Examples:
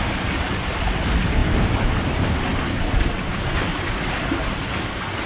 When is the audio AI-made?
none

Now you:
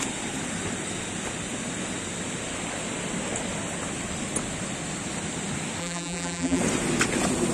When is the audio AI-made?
5.8-6.6 (vocoder, BigVGAN v2)

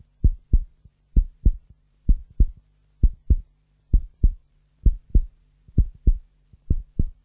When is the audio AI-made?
0.0-2.2 (vocoder, BigVGAN v2); 3.1-7.2